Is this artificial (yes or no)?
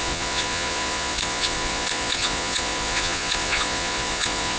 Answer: yes